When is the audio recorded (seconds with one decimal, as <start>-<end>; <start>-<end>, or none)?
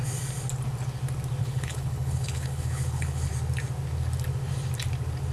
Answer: 0.0-1.4; 3.3-5.3